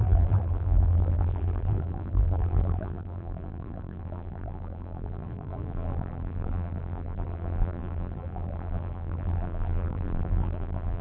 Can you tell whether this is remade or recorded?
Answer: remade